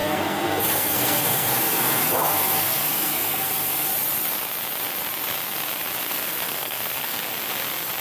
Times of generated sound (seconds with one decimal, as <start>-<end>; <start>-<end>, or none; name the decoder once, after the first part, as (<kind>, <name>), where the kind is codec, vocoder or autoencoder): 0.0-3.9 (codec, SNAC); 6.1-7.2

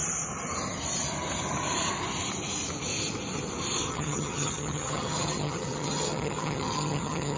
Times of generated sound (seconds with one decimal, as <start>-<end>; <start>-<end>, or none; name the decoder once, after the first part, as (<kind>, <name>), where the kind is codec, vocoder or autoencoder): 3.9-7.4 (vocoder, HiFi-GAN)

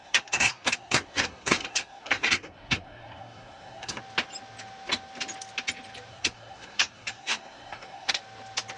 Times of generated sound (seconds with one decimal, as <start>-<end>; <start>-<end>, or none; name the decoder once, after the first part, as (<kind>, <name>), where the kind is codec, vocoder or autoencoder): 0.0-4.0 (codec, SNAC); 6.1-8.2